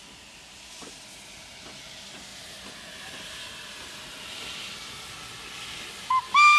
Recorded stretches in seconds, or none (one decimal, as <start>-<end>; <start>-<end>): 0.0-6.6